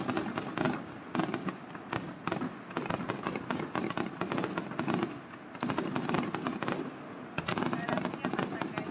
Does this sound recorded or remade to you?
recorded